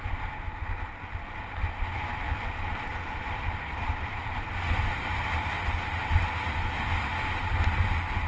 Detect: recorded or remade recorded